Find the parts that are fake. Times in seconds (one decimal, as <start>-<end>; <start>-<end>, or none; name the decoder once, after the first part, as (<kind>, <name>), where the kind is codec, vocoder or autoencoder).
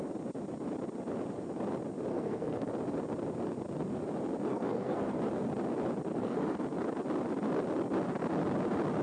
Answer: 2.1-2.7 (codec, SNAC); 4.5-5.2; 6.1-6.6